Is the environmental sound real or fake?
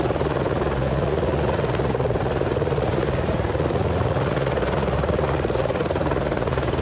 fake